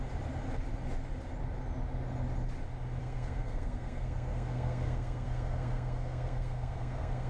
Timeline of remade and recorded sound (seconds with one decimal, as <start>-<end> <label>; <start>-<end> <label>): 0.0-3.0 recorded; 3.0-7.3 remade